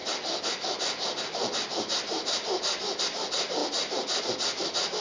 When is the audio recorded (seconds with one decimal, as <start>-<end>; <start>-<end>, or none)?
0.0-5.0